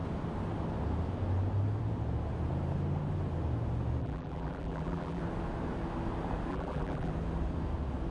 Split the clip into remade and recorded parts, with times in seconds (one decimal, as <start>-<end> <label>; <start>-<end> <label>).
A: 0.0-4.0 recorded; 4.0-5.2 remade; 5.2-6.5 recorded; 6.5-7.1 remade; 7.1-8.1 recorded